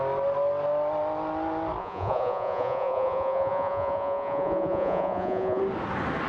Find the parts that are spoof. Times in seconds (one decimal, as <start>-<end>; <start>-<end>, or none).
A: 1.8-5.6